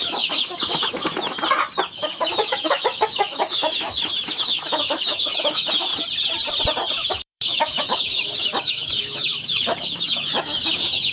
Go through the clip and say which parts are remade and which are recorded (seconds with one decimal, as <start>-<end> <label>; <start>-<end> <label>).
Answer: 0.0-1.4 remade; 1.4-1.9 recorded; 1.9-5.9 remade; 5.9-6.9 recorded; 6.9-11.1 remade